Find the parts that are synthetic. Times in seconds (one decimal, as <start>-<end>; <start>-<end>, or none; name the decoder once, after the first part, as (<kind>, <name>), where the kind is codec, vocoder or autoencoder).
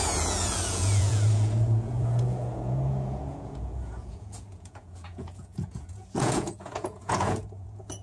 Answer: 0.0-8.0 (vocoder, Vocos)